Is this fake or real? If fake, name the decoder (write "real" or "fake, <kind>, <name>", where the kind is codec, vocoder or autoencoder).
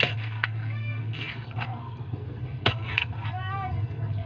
fake, codec, SNAC